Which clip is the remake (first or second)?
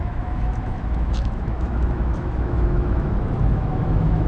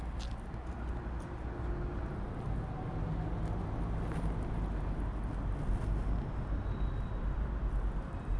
first